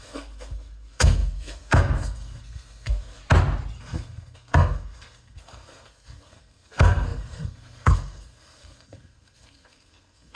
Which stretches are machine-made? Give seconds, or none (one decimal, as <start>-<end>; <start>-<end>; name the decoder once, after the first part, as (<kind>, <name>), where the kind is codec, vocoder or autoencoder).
0.0-3.2 (codec, SNAC); 3.8-10.4